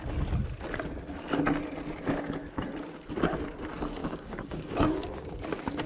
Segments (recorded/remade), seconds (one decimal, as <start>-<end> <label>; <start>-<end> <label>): 0.0-4.0 recorded; 4.0-5.4 remade; 5.4-5.9 recorded